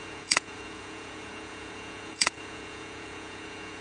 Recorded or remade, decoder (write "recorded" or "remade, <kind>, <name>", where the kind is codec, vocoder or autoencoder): remade, vocoder, Vocos